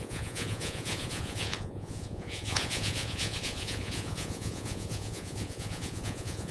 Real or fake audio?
fake